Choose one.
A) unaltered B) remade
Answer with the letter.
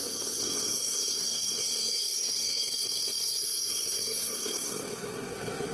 B